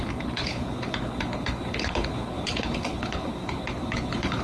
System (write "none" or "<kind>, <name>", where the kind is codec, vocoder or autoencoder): codec, HILCodec